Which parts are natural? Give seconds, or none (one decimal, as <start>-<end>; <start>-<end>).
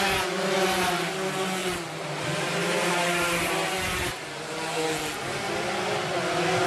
0.0-1.6; 4.1-6.7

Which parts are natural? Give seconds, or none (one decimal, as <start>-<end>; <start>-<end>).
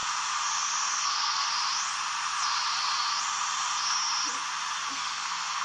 0.0-0.8; 1.5-4.9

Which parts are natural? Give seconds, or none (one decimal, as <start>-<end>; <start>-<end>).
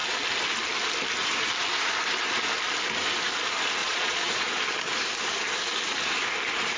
0.0-3.8; 4.6-6.8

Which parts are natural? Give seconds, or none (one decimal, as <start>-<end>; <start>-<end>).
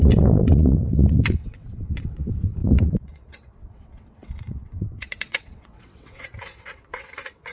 none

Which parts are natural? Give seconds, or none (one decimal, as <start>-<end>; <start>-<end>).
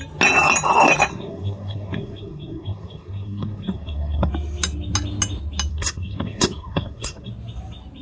0.0-1.1; 4.3-5.7; 7.3-8.0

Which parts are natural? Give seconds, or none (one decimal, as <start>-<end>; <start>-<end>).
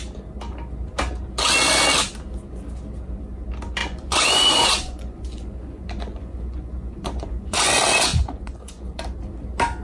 0.0-3.8; 7.7-8.1; 9.0-9.8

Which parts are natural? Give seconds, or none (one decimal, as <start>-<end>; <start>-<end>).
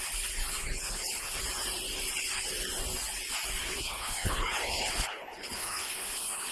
0.0-0.5; 1.4-3.6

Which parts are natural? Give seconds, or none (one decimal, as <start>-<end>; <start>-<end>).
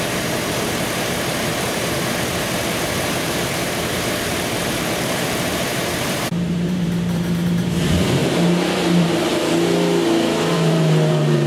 9.3-10.5